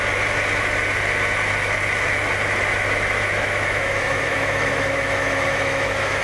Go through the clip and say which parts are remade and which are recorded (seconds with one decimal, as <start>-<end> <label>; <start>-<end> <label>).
0.0-2.7 recorded; 2.7-6.2 remade